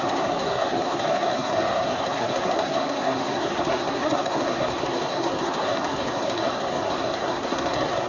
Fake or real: fake